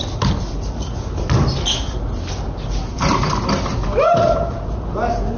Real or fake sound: real